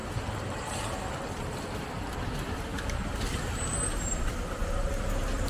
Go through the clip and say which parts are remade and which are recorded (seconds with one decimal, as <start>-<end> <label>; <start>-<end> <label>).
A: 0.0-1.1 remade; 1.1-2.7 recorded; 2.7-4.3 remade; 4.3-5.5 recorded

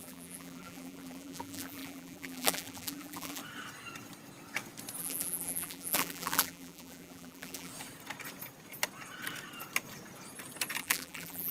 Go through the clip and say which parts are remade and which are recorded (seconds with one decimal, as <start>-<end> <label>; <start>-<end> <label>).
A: 0.0-3.4 remade; 3.4-5.0 recorded; 5.0-7.7 remade; 7.7-10.8 recorded; 10.8-11.5 remade

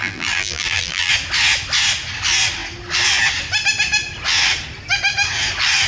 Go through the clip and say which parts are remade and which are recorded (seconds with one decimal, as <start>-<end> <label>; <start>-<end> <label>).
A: 0.0-1.1 remade; 1.1-5.9 recorded

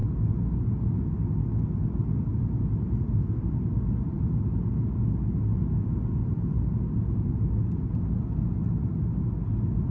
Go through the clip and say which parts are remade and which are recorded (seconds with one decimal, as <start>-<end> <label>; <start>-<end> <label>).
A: 0.0-2.3 recorded; 2.3-3.7 remade; 3.7-9.9 recorded

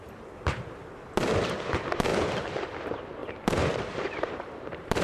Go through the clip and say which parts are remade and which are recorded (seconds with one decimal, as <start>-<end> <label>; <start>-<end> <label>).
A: 0.0-0.8 remade; 0.8-1.7 recorded; 1.7-2.1 remade; 2.1-2.8 recorded; 2.8-3.2 remade; 3.2-3.7 recorded; 3.7-5.0 remade

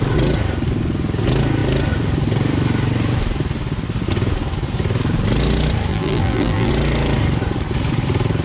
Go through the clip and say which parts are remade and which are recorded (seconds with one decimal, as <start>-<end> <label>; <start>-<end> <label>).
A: 0.0-5.9 recorded; 5.9-6.7 remade; 6.7-8.4 recorded

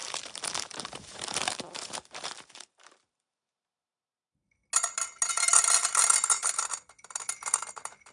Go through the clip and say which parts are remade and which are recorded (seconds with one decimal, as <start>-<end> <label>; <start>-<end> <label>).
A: 0.0-3.4 remade; 3.4-8.1 recorded